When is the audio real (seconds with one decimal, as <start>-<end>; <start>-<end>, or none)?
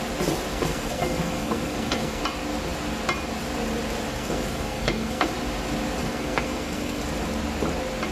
0.0-0.5; 2.2-4.1; 5.3-6.0; 7.0-8.1